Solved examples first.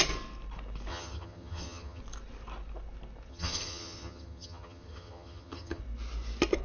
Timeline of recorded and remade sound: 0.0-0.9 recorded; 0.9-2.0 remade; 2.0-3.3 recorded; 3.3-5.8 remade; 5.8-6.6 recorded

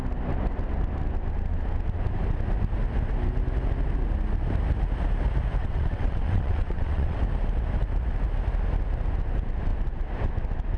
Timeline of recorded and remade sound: 0.0-5.6 recorded; 5.6-7.2 remade; 7.2-10.8 recorded

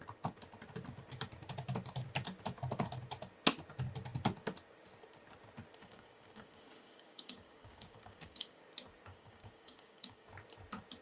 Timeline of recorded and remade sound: 0.0-5.8 recorded; 5.8-8.6 remade; 8.6-9.1 recorded; 9.1-10.3 remade; 10.3-11.0 recorded